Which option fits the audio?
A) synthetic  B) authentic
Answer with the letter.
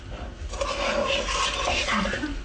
B